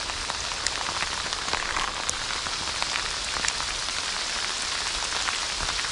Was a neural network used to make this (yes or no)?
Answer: no